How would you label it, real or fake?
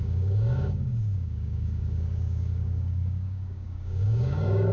fake